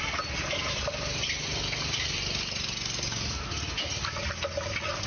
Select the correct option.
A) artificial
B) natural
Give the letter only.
B